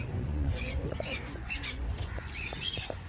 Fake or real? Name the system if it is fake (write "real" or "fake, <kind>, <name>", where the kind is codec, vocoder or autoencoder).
fake, vocoder, Vocos